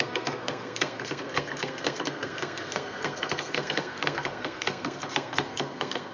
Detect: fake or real fake